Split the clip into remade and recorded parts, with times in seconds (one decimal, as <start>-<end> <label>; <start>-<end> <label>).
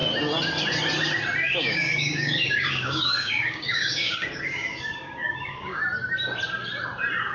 0.0-1.4 recorded; 1.4-5.8 remade; 5.8-7.3 recorded